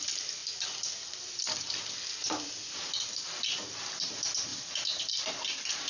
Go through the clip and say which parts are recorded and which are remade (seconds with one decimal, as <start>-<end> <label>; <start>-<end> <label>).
0.0-0.4 remade; 0.4-3.9 recorded; 3.9-5.9 remade